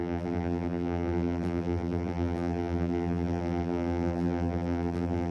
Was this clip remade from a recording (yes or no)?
yes